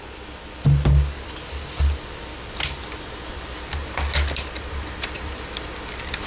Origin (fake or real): real